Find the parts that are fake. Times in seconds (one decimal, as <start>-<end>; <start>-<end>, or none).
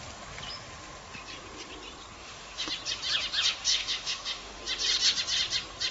2.2-2.7; 3.7-4.6